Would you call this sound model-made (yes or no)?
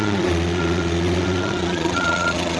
yes